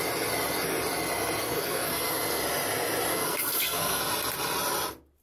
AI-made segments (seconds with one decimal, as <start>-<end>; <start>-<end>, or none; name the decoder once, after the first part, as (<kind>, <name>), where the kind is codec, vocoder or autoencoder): 1.4-2.4 (codec, SNAC); 3.1-4.0